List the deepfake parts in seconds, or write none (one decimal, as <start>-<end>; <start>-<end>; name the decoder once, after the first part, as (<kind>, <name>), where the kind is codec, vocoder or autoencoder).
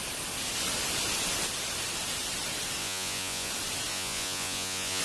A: 2.8-3.5 (vocoder, Vocos); 3.9-5.0